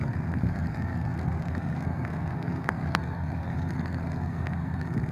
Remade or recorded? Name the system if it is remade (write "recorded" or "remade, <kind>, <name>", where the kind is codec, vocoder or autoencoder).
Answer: remade, codec, SNAC